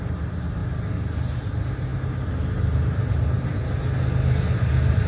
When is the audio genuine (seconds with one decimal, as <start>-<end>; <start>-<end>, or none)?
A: 0.0-5.1